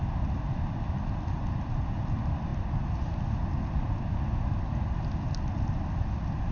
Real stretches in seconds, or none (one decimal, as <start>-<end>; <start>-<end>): 0.0-6.5